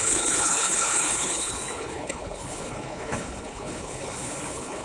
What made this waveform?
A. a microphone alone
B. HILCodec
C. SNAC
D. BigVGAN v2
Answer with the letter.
B